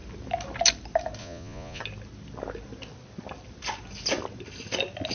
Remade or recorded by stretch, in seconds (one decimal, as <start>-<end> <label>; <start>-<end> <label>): 0.0-1.2 recorded; 1.2-1.8 remade; 1.8-5.1 recorded